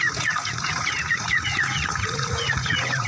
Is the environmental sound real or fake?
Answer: fake